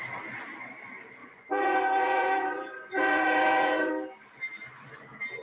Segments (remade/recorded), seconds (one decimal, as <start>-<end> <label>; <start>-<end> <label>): 0.0-1.2 recorded; 1.2-3.9 remade; 3.9-5.4 recorded